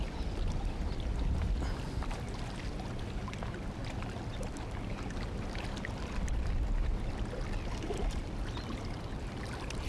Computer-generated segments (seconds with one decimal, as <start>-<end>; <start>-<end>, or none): none

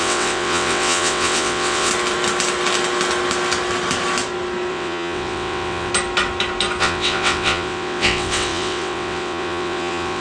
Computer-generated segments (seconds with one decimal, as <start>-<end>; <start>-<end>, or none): 0.0-1.9; 4.7-5.9; 6.8-10.2